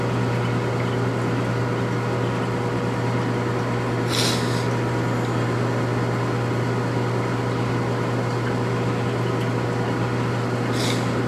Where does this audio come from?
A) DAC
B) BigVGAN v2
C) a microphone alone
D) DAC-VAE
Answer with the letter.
C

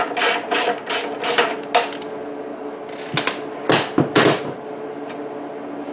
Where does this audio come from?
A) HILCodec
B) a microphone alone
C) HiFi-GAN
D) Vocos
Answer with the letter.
B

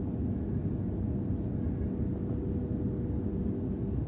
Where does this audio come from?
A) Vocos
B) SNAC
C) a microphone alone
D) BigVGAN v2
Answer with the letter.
C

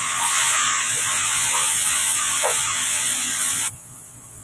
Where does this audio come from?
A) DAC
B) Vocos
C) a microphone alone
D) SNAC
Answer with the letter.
B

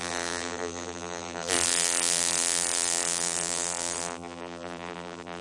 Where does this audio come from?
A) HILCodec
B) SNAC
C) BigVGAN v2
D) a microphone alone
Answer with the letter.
C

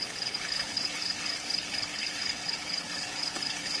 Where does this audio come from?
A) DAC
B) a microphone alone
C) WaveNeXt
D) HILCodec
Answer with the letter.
D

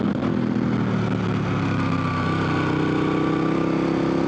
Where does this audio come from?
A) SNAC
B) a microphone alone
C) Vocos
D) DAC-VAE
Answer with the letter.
B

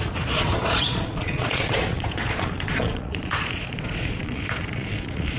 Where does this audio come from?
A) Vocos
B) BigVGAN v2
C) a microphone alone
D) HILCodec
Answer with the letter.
A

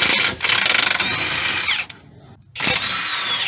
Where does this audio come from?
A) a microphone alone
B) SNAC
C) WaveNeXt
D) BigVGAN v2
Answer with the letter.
A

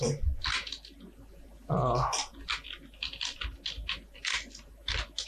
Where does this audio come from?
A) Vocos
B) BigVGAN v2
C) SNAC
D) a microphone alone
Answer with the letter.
D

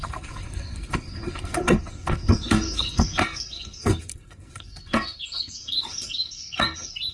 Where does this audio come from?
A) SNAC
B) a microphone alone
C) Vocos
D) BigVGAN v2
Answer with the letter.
A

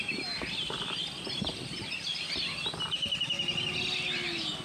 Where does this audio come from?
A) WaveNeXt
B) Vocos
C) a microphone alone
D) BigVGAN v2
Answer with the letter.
C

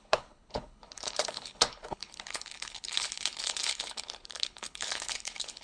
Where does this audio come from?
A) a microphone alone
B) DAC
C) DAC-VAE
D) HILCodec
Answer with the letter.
D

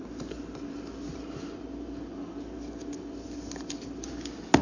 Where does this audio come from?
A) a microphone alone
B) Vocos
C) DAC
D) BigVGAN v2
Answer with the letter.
A